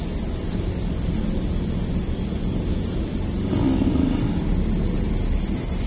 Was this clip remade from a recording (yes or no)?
no